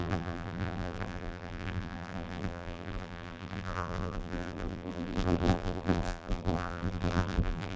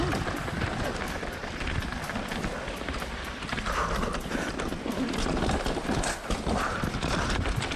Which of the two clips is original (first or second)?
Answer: second